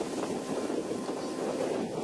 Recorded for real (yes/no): yes